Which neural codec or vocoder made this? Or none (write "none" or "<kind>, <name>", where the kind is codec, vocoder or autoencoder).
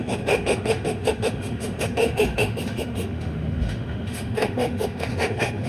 autoencoder, DAC-VAE